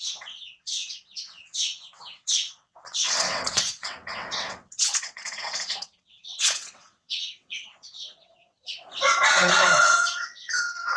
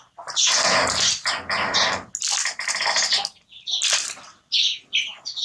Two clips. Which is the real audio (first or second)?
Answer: second